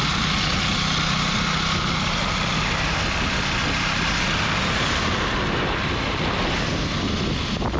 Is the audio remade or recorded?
recorded